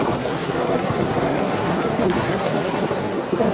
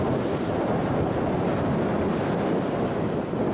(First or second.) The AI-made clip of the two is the first